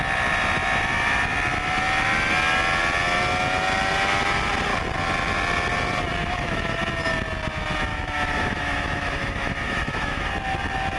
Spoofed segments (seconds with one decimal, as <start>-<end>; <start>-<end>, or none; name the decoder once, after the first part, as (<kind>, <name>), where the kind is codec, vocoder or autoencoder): 6.2-6.9 (autoencoder, DAC-VAE); 7.9-10.3